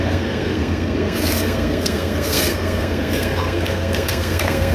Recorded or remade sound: remade